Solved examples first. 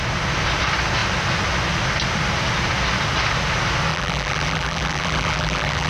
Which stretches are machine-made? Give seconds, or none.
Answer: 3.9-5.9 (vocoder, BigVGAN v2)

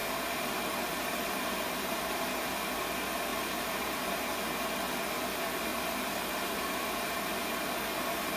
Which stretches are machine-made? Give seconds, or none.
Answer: 0.0-2.7 (vocoder, BigVGAN v2); 3.3-4.3; 5.7-7.3

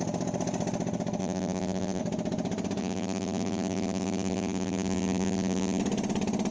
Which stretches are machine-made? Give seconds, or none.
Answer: 1.2-2.0 (vocoder, BigVGAN v2); 2.8-5.8

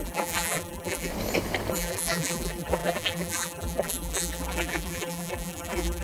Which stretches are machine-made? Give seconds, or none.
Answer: 0.0-1.1 (vocoder, BigVGAN v2); 1.7-6.0